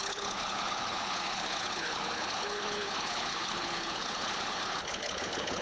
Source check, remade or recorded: remade